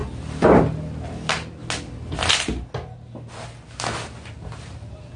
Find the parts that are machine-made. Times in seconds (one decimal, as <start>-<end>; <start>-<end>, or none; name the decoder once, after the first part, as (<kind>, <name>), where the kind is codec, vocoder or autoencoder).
none

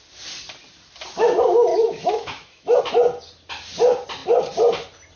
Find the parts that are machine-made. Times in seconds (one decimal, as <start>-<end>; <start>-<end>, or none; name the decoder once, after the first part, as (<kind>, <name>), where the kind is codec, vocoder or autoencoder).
1.7-2.8 (autoencoder, DAC-VAE)

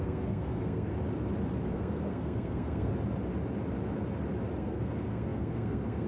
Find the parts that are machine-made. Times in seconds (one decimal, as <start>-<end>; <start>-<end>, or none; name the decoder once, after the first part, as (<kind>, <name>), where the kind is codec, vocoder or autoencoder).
0.0-0.9 (codec, SNAC); 1.7-2.9; 4.6-6.1

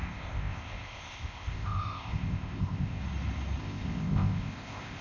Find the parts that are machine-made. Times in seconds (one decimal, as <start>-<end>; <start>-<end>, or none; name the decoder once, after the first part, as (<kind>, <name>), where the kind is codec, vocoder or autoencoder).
0.0-3.0 (codec, ZipCodec); 3.6-5.0

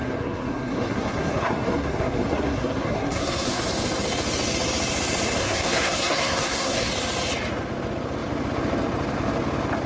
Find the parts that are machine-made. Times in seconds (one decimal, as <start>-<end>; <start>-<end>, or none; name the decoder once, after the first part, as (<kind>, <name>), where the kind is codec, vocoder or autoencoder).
0.0-3.6 (codec, SNAC); 5.4-6.9

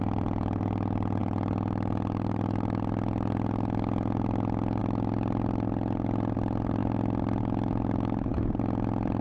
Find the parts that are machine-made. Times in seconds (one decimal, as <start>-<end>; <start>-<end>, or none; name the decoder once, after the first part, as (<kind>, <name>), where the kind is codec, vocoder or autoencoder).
none

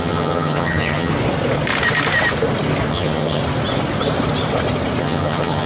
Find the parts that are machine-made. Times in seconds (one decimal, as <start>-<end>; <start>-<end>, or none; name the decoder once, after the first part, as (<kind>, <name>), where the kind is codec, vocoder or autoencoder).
0.0-1.1 (vocoder, HiFi-GAN); 2.9-3.4; 5.0-5.7

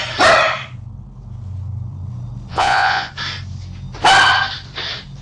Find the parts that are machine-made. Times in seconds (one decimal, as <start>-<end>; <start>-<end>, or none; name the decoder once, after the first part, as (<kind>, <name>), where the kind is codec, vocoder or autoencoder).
2.5-3.1 (vocoder, Vocos)